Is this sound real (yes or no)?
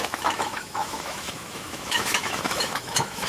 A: no